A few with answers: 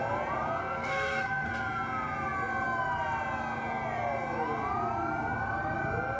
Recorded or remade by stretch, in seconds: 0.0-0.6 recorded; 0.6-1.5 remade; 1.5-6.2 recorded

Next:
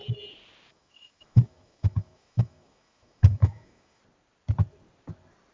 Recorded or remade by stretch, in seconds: 0.0-0.7 recorded; 0.7-4.0 remade; 4.0-5.5 recorded

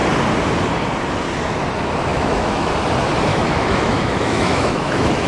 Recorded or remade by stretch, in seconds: 0.0-2.1 recorded; 2.1-2.7 remade; 2.7-3.3 recorded; 3.3-5.3 remade

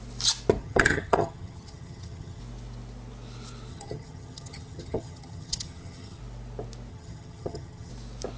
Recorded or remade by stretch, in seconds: 0.0-0.6 recorded; 0.6-2.4 remade; 2.4-3.7 recorded; 3.7-6.2 remade; 6.2-6.9 recorded; 6.9-7.9 remade; 7.9-8.4 recorded

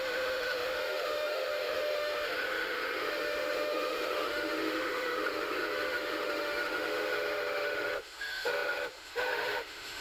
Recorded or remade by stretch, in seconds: 0.0-10.0 remade

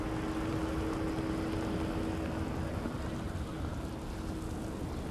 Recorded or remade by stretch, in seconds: 0.0-5.1 recorded

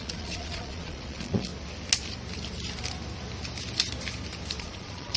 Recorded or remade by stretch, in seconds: 0.0-1.5 remade; 1.5-4.6 recorded; 4.6-5.2 remade

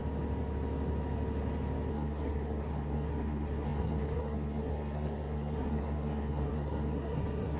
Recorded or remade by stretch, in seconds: 0.0-1.9 recorded; 1.9-7.6 remade